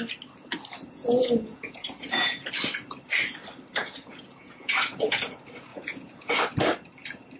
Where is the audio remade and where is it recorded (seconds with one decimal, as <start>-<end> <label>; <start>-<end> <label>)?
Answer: 0.0-1.0 recorded; 1.0-2.5 remade; 2.5-3.8 recorded; 3.8-5.2 remade; 5.2-5.7 recorded; 5.7-6.4 remade; 6.4-7.4 recorded